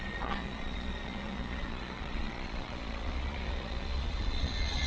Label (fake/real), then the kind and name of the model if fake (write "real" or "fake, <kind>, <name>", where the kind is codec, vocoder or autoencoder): fake, vocoder, Vocos